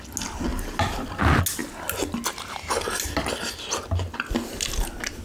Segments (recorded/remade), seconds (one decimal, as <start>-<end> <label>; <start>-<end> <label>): 0.0-0.5 recorded; 0.5-1.1 remade; 1.1-5.2 recorded